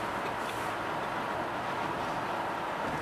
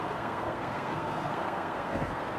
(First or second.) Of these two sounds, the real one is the first